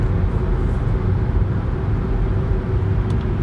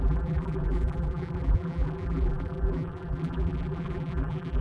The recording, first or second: first